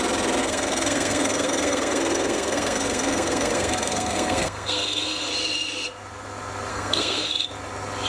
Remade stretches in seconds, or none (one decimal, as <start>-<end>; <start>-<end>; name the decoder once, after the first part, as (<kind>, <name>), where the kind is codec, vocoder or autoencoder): 0.4-5.3 (codec, SNAC); 6.7-7.3